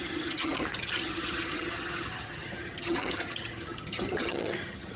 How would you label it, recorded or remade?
remade